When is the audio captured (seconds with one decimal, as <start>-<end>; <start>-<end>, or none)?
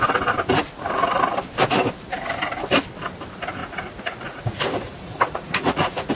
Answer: 0.0-3.6